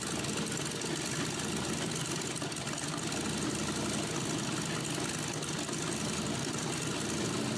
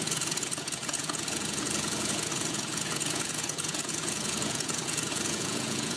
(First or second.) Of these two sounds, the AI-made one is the second